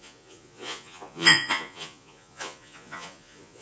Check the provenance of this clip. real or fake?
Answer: fake